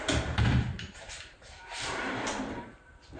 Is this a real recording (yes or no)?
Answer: no